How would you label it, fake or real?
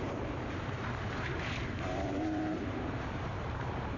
fake